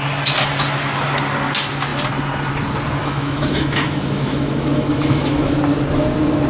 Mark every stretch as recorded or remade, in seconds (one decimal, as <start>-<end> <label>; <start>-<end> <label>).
0.0-3.0 recorded; 3.0-5.6 remade; 5.6-6.5 recorded